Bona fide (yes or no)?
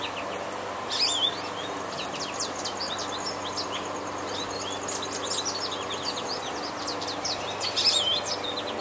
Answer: yes